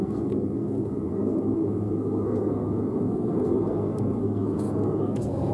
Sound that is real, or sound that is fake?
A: fake